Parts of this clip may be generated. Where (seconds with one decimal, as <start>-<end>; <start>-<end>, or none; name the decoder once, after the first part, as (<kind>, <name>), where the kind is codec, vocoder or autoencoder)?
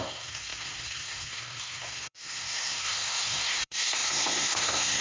0.0-5.0 (codec, SNAC)